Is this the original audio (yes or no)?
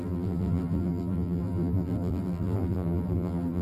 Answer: no